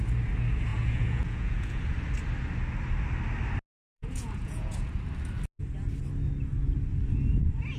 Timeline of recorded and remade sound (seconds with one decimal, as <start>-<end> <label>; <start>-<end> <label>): 0.0-0.7 recorded; 0.7-1.8 remade; 1.8-3.8 recorded; 3.8-4.9 remade; 4.9-7.8 recorded